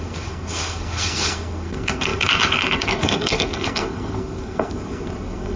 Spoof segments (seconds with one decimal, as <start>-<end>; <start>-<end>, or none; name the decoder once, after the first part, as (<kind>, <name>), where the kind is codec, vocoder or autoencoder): 0.0-5.6 (codec, SNAC)